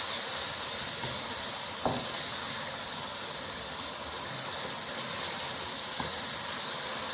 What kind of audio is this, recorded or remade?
recorded